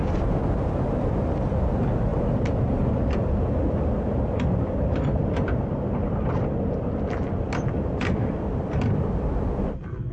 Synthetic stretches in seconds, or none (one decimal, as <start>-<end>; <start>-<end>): none